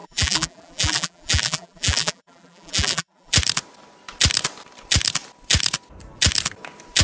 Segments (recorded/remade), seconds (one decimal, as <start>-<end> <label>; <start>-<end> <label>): 0.0-3.3 remade; 3.3-7.0 recorded